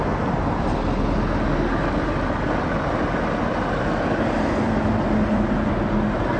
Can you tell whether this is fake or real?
real